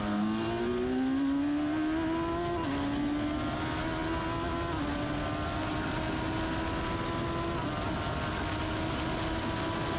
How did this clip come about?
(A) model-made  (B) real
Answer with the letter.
B